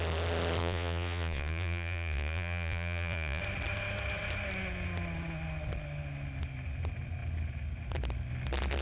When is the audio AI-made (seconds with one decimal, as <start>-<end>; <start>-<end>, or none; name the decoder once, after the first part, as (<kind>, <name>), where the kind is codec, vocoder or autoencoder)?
0.6-3.4 (vocoder, Vocos)